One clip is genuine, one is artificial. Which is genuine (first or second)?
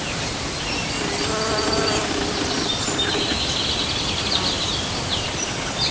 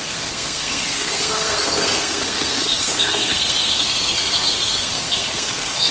first